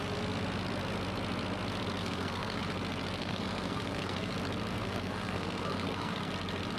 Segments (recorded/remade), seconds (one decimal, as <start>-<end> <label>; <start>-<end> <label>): 0.0-2.0 recorded; 2.0-2.6 remade; 2.6-3.2 recorded; 3.2-4.3 remade; 4.3-4.7 recorded; 4.7-6.3 remade; 6.3-6.8 recorded